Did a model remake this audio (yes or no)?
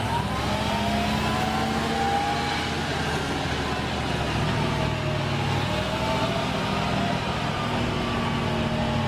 no